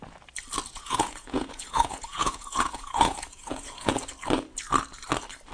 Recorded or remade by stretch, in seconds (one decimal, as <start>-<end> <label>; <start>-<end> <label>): 0.0-0.7 recorded; 0.7-4.0 remade; 4.0-5.5 recorded